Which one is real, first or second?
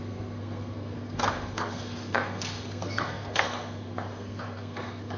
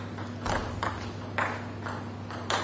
second